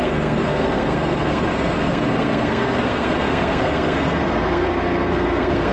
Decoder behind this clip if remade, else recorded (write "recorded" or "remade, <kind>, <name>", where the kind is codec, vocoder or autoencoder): remade, codec, SNAC